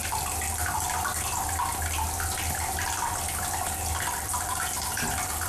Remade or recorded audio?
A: remade